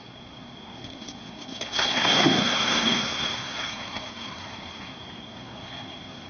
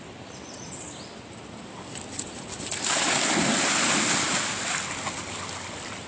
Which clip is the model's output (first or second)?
first